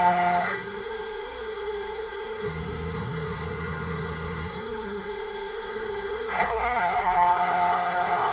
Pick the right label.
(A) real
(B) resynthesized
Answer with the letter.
B